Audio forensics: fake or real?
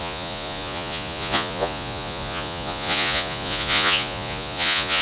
fake